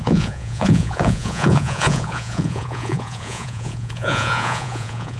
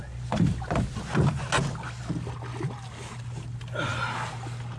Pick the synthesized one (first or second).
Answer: first